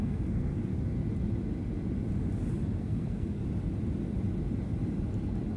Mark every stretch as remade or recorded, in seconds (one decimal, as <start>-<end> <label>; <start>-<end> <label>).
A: 0.0-0.7 remade; 0.7-2.8 recorded; 2.8-3.4 remade; 3.4-5.6 recorded